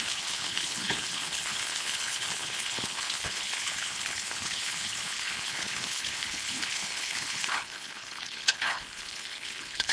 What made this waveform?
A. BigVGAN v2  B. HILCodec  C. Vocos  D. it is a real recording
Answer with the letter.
B